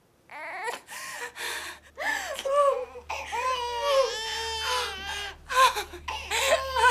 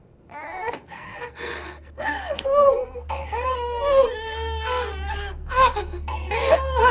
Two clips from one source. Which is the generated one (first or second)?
second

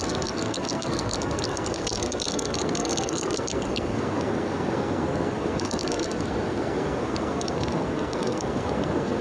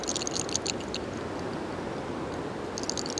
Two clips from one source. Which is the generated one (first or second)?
first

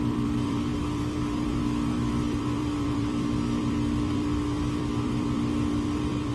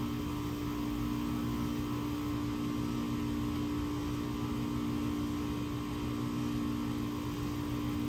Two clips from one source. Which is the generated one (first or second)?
first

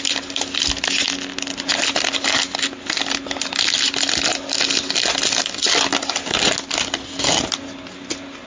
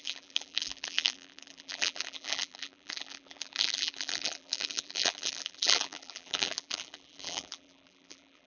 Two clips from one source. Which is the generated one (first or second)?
second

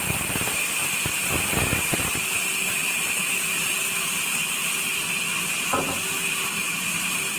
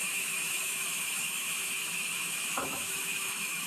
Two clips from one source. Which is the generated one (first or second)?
second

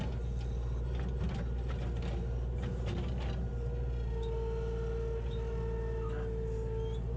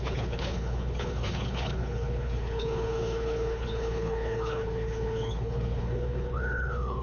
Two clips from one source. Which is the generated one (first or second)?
second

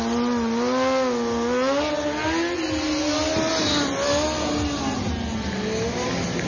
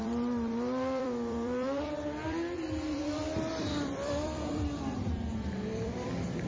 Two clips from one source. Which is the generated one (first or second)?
second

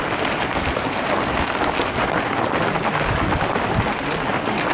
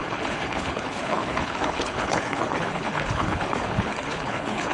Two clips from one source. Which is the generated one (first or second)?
second